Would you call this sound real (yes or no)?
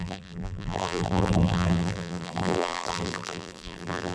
no